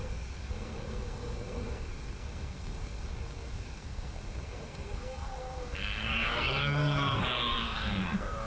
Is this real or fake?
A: fake